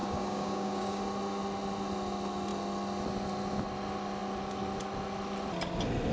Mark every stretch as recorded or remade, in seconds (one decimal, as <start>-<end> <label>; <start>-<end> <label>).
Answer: 0.0-1.0 remade; 1.0-6.1 recorded